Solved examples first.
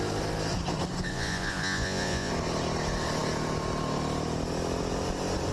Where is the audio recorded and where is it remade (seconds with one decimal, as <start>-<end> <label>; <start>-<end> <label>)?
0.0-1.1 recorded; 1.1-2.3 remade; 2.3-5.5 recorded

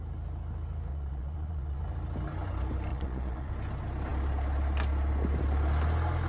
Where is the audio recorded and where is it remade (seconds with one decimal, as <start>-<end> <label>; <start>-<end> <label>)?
0.0-0.9 recorded; 0.9-1.8 remade; 1.8-2.9 recorded; 2.9-3.5 remade; 3.5-6.3 recorded

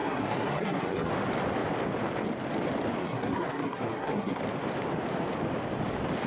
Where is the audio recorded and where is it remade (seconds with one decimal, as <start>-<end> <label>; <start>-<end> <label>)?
0.0-1.1 remade; 1.1-3.0 recorded; 3.0-4.4 remade; 4.4-6.3 recorded

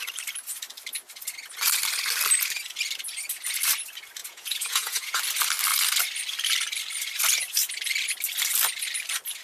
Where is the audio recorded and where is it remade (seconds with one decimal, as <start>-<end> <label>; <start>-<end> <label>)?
0.0-4.2 recorded; 4.2-5.2 remade; 5.2-9.4 recorded